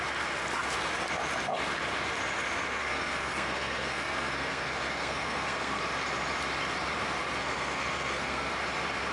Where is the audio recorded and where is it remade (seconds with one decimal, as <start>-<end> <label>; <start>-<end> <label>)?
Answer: 0.0-2.7 recorded; 2.7-5.8 remade; 5.8-7.4 recorded; 7.4-8.5 remade; 8.5-9.1 recorded